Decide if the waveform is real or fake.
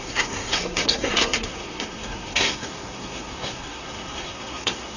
fake